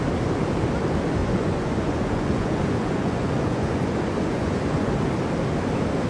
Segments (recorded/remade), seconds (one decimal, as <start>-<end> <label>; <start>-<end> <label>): 0.0-1.2 recorded; 1.2-4.9 remade; 4.9-6.1 recorded